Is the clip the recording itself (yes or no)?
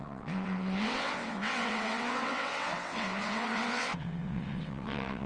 no